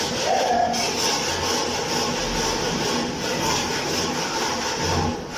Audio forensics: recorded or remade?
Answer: recorded